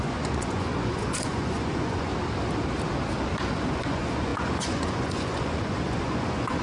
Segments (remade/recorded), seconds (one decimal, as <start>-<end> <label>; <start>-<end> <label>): 0.0-2.1 remade; 2.1-3.7 recorded; 3.7-6.6 remade